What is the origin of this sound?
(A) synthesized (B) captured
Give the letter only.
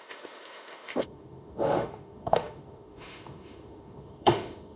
A